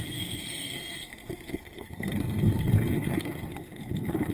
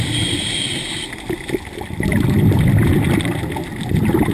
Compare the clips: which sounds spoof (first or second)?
first